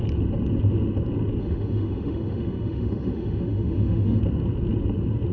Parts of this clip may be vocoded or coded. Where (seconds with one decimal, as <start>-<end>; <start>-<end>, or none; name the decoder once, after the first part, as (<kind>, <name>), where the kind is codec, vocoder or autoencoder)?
1.4-4.2 (autoencoder, DAC-VAE)

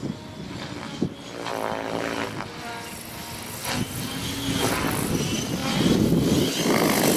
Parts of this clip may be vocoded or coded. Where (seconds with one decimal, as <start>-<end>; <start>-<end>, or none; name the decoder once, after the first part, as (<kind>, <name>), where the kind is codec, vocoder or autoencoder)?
none

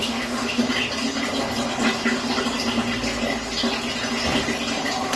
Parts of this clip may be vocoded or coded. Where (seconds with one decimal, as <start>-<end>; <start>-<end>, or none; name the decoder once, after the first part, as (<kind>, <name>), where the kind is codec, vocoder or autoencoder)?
0.0-0.6 (autoencoder, DAC-VAE)

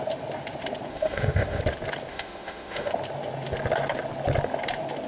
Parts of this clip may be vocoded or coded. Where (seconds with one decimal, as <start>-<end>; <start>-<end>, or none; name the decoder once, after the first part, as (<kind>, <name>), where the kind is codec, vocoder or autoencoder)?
0.9-1.6 (autoencoder, DAC-VAE); 2.1-2.9